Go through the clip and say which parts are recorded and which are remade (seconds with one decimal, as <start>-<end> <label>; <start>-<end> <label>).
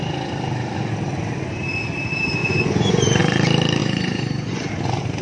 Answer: 0.0-2.4 recorded; 2.4-3.2 remade; 3.2-3.8 recorded; 3.8-4.7 remade; 4.7-5.2 recorded